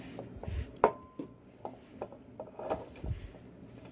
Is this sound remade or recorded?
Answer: recorded